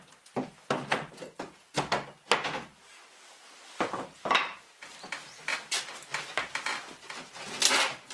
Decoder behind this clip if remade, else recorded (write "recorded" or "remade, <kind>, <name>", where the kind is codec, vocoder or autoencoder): recorded